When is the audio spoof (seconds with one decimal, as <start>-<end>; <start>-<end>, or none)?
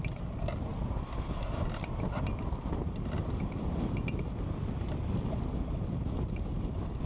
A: none